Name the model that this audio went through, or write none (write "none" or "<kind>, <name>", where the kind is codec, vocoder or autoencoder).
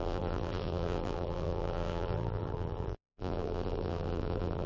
vocoder, BigVGAN v2